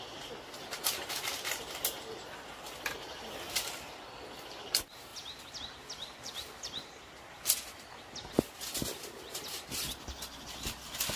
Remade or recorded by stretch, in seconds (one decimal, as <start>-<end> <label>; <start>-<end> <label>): 0.0-11.2 recorded